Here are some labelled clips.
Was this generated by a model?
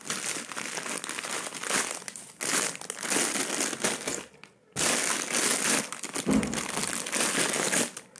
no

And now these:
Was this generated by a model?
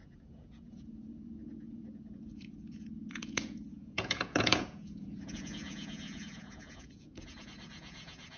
yes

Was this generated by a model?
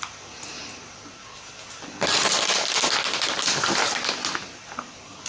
no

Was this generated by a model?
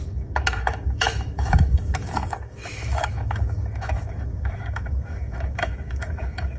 yes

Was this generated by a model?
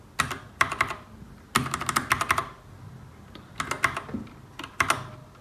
no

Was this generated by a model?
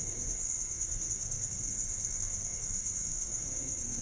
yes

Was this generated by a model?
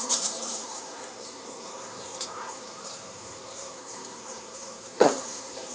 yes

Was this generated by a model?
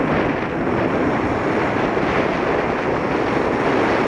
no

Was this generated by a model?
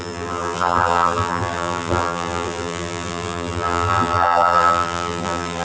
yes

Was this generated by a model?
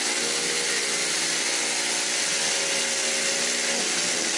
no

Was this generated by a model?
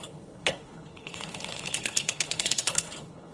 yes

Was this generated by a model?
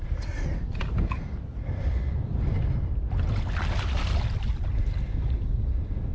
no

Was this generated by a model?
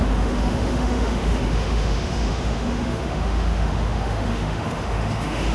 yes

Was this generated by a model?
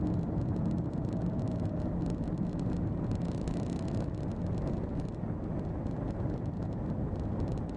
no